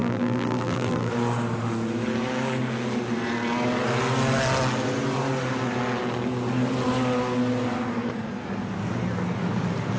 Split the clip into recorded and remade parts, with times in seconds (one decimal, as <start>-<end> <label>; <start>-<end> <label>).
0.0-1.1 remade; 1.1-10.0 recorded